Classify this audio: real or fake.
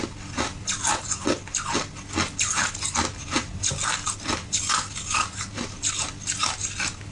real